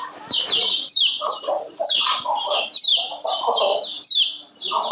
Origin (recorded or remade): remade